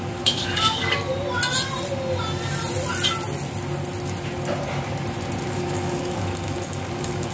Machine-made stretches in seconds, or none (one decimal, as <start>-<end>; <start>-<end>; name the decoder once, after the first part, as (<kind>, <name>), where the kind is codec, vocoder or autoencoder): 0.0-1.1 (codec, DAC); 5.5-7.3